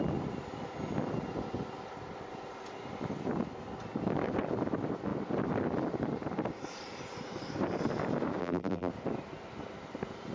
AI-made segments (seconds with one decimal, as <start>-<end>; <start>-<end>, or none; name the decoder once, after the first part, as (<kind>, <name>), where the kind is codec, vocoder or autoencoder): 8.4-8.9 (vocoder, BigVGAN v2)